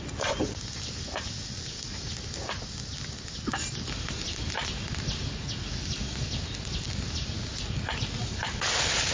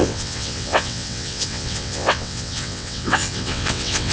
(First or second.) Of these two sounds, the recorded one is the first